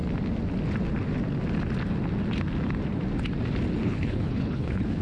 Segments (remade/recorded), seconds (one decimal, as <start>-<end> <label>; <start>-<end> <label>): 0.0-3.8 recorded; 3.8-5.0 remade